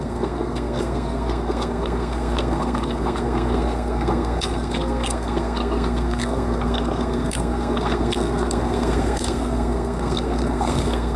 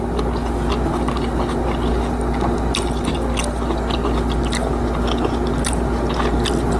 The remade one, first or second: first